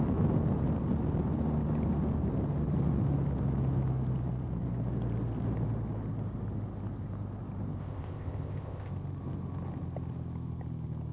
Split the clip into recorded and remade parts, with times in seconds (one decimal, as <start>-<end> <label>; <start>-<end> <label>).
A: 0.0-7.8 recorded; 7.8-8.9 remade; 8.9-11.1 recorded